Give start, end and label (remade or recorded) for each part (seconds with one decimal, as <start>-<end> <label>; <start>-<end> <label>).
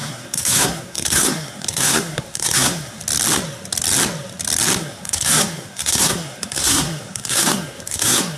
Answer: 0.0-3.0 remade; 3.0-4.8 recorded; 4.8-8.4 remade